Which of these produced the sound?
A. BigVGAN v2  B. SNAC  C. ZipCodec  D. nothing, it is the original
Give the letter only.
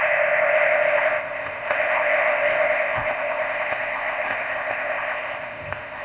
C